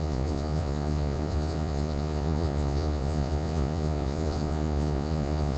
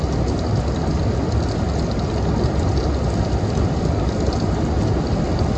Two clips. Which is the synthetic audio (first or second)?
first